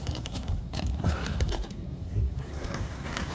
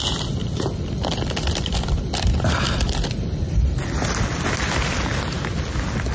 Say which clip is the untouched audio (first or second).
second